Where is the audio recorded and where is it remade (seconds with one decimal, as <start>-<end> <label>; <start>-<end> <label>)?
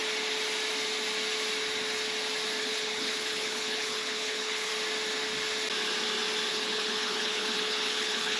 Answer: 0.0-2.6 recorded; 2.6-4.7 remade; 4.7-6.5 recorded; 6.5-8.4 remade